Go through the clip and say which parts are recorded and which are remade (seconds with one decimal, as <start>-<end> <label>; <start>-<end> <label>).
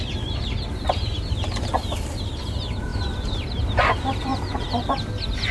0.0-1.7 remade; 1.7-2.3 recorded; 2.3-4.3 remade; 4.3-5.5 recorded